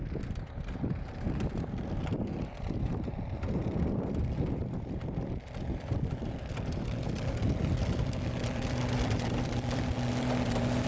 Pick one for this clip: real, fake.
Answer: fake